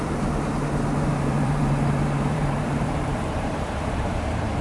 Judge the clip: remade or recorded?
remade